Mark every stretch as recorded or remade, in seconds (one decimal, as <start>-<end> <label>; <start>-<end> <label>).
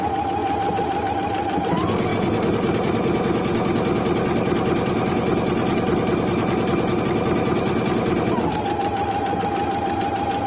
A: 0.0-10.5 recorded